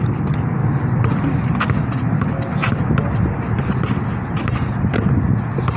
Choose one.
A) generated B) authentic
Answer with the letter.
B